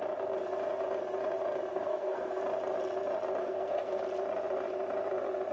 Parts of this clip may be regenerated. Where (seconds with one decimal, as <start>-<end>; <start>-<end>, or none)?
1.7-2.4; 3.4-4.0